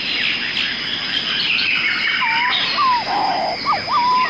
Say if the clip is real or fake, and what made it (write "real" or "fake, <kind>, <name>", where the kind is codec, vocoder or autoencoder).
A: real